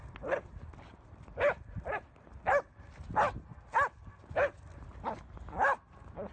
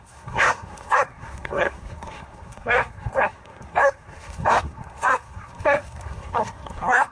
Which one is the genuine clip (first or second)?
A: first